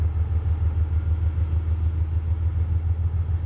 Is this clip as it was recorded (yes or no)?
yes